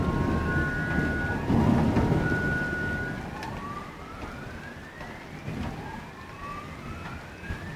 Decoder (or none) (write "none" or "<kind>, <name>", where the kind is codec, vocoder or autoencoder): none